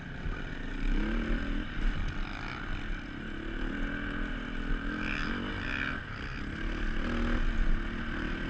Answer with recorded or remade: recorded